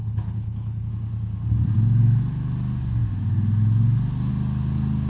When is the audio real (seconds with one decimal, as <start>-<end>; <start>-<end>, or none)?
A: 0.9-5.1